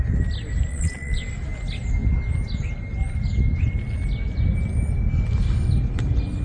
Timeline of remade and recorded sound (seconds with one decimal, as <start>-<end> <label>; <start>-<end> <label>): 0.0-0.7 recorded; 0.7-1.2 remade; 1.2-6.4 recorded